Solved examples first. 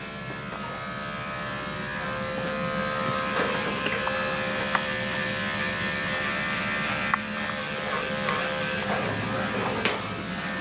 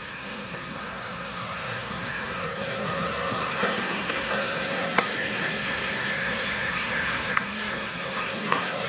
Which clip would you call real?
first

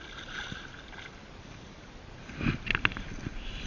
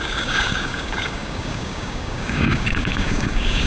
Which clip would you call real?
first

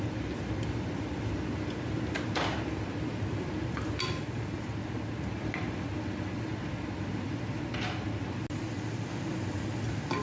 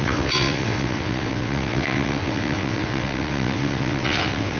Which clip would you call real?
first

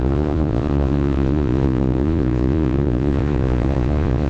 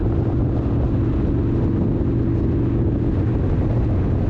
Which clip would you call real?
second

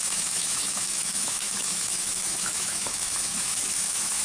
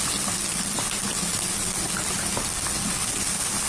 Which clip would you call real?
second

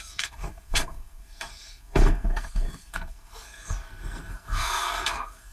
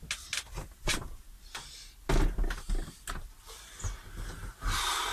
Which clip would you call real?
second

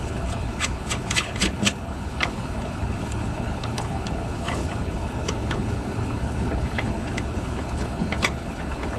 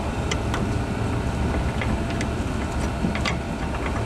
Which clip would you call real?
second